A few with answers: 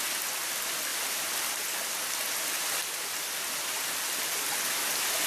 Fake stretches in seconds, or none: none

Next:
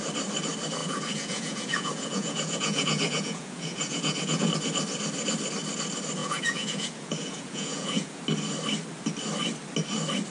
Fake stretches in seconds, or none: 0.8-4.5 (vocoder, Vocos); 6.2-8.2

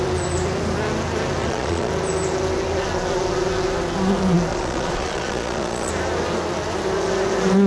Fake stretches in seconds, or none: 1.4-1.9 (vocoder, Vocos); 4.5-5.9